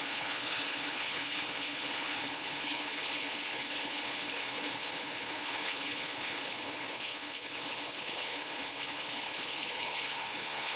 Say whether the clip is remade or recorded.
remade